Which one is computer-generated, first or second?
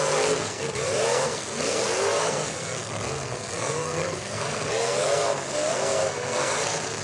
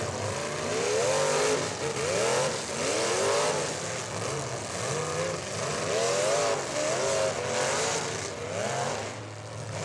first